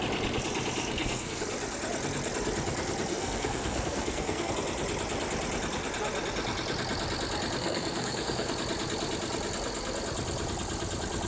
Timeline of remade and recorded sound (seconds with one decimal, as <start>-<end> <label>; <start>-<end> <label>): 0.0-0.8 recorded; 0.8-1.4 remade; 1.4-3.1 recorded; 3.1-4.5 remade; 4.5-7.6 recorded; 7.6-8.5 remade; 8.5-11.3 recorded